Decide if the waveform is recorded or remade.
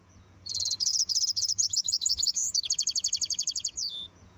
remade